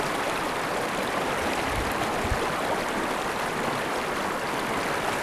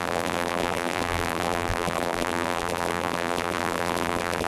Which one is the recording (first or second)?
first